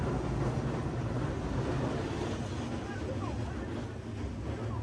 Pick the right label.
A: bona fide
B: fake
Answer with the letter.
A